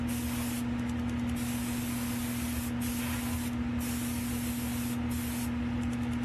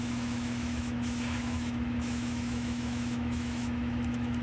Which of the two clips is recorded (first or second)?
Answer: first